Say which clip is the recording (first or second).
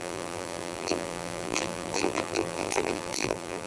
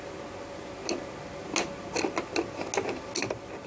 second